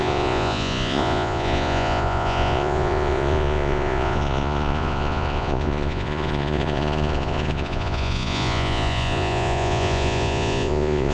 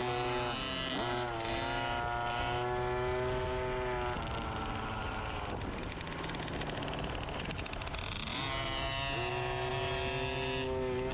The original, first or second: second